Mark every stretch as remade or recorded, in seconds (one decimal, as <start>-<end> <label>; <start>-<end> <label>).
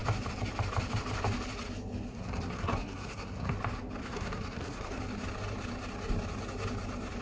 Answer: 0.0-2.1 recorded; 2.1-3.5 remade; 3.5-4.0 recorded; 4.0-5.0 remade; 5.0-7.2 recorded